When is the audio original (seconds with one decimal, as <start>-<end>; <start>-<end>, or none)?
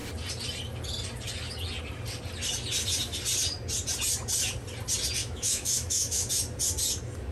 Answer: 0.0-5.2; 6.3-7.3